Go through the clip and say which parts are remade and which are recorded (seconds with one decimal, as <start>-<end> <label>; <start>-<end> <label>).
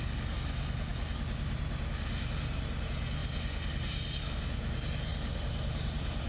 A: 0.0-6.3 recorded